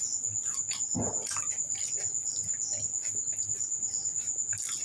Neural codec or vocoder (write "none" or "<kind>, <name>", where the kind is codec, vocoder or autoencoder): none